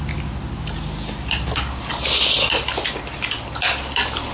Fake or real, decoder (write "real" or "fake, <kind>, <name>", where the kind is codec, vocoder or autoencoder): real